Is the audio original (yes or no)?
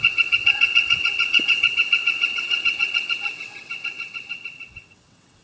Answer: no